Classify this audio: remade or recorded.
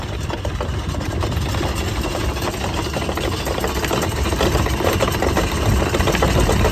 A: recorded